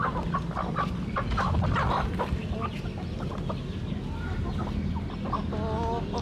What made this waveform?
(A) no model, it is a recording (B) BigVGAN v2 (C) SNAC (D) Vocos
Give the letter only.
A